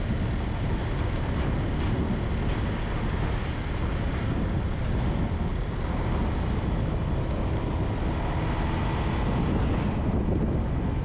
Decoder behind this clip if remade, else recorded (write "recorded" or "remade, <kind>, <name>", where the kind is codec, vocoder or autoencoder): recorded